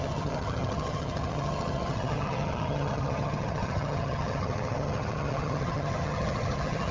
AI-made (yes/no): yes